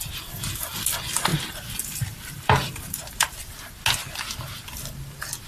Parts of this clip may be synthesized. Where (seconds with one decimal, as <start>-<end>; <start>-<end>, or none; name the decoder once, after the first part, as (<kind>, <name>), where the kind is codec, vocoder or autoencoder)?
1.3-3.4 (vocoder, BigVGAN v2)